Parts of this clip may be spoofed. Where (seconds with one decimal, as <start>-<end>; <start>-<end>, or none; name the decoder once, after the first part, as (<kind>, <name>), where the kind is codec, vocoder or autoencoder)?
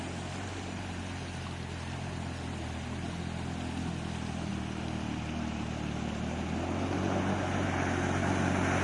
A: none